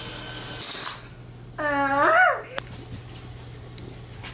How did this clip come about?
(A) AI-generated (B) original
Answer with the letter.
B